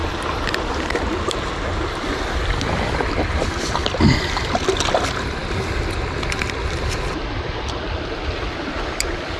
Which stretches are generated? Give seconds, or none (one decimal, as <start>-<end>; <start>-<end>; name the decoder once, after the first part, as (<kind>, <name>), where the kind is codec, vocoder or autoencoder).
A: none

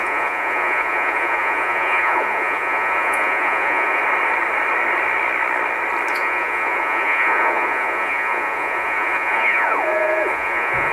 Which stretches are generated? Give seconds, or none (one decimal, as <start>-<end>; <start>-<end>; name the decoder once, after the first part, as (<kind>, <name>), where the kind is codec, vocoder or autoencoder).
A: 0.0-4.0 (vocoder, Vocos); 6.1-10.9

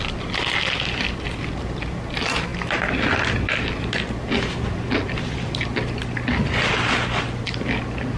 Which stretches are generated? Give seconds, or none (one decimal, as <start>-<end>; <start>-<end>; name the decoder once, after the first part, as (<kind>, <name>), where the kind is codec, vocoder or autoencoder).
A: none

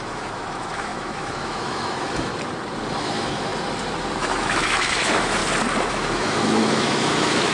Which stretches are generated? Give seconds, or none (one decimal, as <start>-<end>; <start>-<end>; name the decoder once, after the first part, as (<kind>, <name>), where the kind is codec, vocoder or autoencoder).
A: 0.0-2.3 (autoencoder, DAC-VAE); 3.0-3.5; 4.2-5.4; 5.9-7.5

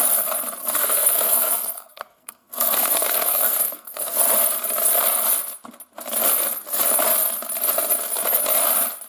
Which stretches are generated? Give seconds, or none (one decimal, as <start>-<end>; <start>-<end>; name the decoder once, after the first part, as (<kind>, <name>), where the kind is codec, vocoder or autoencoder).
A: 0.6-4.2 (codec, SNAC)